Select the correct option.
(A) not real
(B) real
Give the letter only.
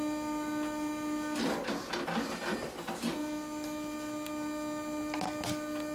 B